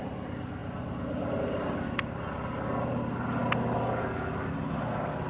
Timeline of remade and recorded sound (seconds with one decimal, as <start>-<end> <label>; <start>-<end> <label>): 0.0-5.3 recorded

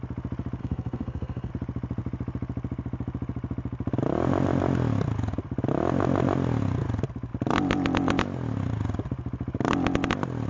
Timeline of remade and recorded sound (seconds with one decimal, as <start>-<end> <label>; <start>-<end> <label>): 0.0-0.6 recorded; 0.6-1.5 remade; 1.5-10.5 recorded

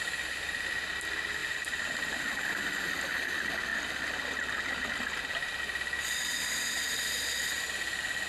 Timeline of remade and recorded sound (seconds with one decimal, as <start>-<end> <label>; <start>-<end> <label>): 0.0-1.4 recorded; 1.4-2.9 remade; 2.9-3.7 recorded; 3.7-5.6 remade; 5.6-8.3 recorded

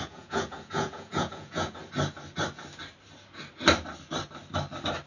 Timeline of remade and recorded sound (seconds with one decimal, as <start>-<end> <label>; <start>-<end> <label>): 0.0-1.8 remade; 1.8-5.1 recorded

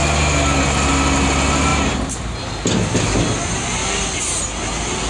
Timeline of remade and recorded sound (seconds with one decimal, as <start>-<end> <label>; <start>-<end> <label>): 0.0-5.1 recorded

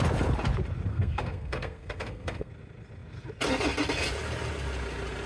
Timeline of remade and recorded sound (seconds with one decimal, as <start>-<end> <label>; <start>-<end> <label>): 0.0-0.9 recorded; 0.9-2.5 remade; 2.5-5.3 recorded

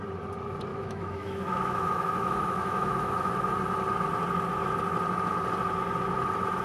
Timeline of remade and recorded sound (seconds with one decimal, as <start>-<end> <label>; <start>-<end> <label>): 0.0-0.7 recorded; 0.7-3.3 remade; 3.3-6.6 recorded

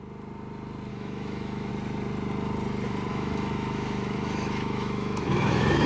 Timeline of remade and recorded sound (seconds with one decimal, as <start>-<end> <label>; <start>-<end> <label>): 0.0-0.9 recorded; 0.9-1.7 remade; 1.7-3.1 recorded; 3.1-5.9 remade